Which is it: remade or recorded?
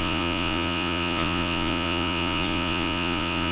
remade